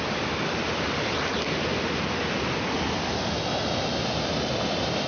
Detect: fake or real real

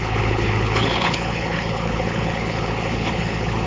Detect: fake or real fake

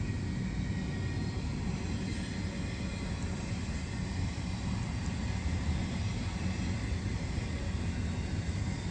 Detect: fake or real real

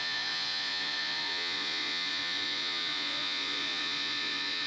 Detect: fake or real fake